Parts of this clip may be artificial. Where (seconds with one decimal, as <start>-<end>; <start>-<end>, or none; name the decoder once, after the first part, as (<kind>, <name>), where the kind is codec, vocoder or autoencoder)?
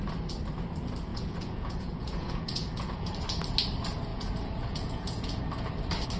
1.1-3.1 (vocoder, Vocos); 4.1-5.4